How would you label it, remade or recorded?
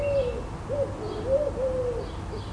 recorded